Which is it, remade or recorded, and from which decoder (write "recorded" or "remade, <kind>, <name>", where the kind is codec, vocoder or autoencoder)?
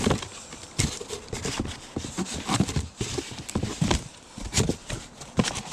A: recorded